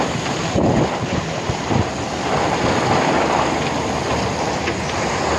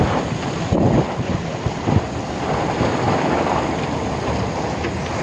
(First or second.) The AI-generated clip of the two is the second